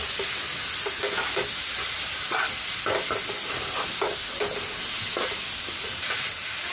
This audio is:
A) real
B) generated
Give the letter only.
A